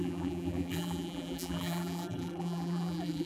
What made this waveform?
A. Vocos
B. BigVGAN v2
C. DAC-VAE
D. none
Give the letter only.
B